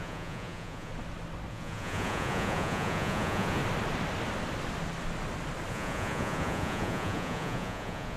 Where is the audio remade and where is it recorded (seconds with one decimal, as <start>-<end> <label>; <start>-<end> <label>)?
0.0-0.9 remade; 0.9-1.5 recorded; 1.5-3.6 remade; 3.6-5.7 recorded; 5.7-8.2 remade